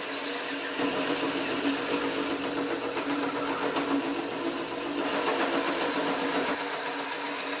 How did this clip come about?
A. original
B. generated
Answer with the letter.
A